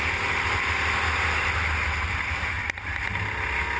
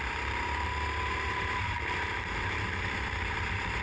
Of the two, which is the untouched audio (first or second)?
first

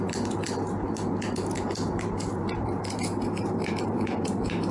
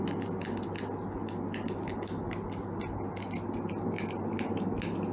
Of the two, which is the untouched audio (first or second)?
second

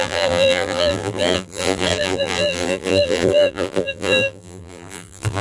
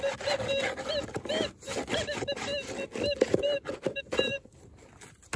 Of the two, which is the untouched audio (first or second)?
second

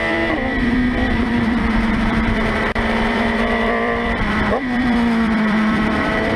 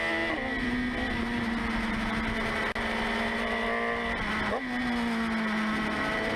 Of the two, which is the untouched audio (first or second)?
second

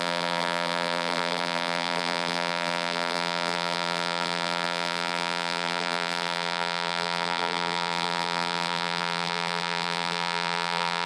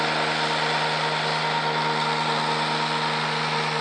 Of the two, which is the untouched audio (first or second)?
second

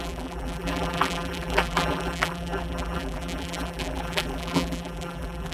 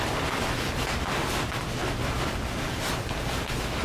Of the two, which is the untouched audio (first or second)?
second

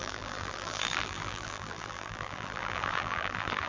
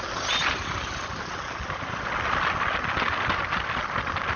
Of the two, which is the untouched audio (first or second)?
second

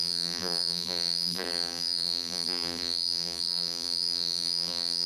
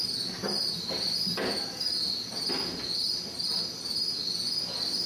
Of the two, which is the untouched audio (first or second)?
second